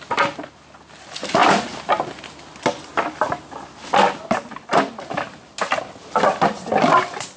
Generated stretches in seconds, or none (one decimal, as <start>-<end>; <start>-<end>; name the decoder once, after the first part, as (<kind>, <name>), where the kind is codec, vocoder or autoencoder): none